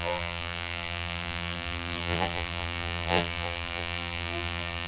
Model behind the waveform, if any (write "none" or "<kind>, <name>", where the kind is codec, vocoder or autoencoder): vocoder, BigVGAN v2